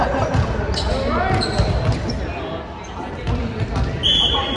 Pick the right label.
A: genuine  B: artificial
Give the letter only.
A